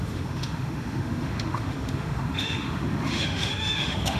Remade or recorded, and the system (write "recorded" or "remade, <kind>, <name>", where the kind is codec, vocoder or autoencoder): remade, autoencoder, DAC-VAE